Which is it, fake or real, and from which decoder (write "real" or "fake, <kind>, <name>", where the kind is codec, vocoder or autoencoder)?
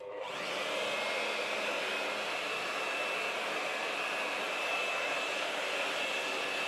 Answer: real